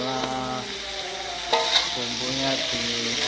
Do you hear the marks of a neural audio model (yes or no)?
no